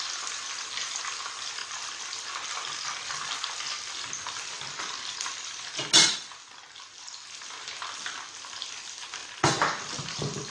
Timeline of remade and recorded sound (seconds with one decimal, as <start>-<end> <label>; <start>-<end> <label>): 0.0-10.5 recorded